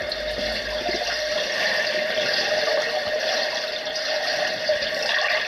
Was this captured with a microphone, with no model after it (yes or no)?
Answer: yes